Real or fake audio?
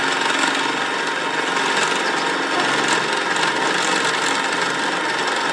real